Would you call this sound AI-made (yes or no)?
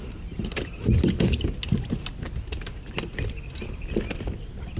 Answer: no